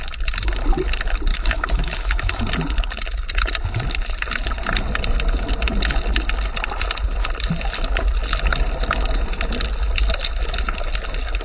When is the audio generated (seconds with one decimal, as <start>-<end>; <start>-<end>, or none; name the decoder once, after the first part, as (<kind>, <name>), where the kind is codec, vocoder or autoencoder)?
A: 1.3-2.4 (autoencoder, DAC-VAE)